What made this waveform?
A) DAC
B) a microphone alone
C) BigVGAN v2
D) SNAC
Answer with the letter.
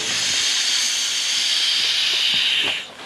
B